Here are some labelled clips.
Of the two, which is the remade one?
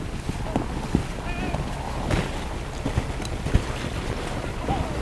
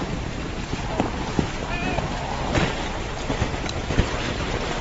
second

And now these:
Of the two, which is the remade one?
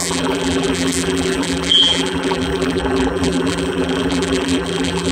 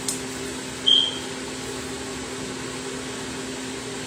first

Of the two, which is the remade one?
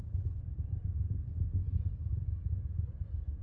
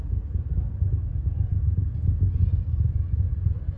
first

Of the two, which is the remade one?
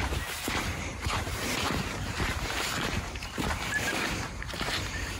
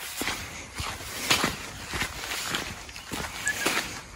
first